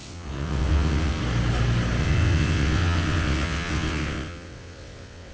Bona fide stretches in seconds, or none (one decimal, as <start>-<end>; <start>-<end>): 1.2-2.0